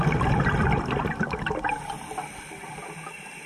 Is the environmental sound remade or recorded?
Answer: recorded